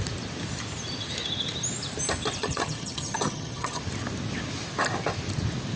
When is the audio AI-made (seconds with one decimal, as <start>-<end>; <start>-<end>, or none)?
2.4-3.8